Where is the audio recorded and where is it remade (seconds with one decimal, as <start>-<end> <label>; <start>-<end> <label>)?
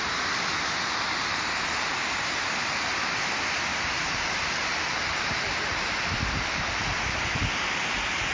0.0-3.7 recorded; 3.7-6.7 remade; 6.7-8.3 recorded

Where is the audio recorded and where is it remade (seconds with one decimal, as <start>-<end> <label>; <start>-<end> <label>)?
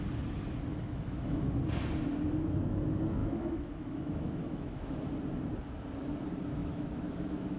0.0-0.7 recorded; 0.7-1.5 remade; 1.5-3.2 recorded; 3.2-5.1 remade; 5.1-6.6 recorded; 6.6-7.6 remade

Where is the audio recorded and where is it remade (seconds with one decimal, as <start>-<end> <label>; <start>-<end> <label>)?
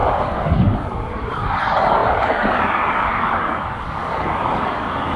0.0-5.2 remade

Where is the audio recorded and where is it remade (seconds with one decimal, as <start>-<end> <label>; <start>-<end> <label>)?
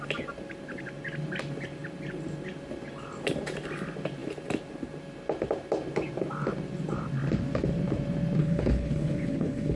0.0-8.4 recorded; 8.4-9.8 remade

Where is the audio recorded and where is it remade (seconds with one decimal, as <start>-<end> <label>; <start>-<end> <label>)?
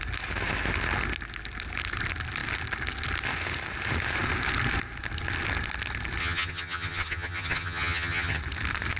0.0-6.2 recorded; 6.2-8.4 remade; 8.4-9.0 recorded